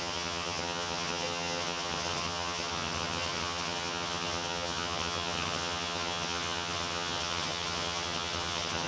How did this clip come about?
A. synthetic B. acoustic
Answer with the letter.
A